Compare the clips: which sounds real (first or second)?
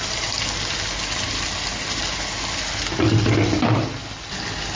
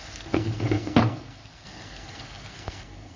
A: first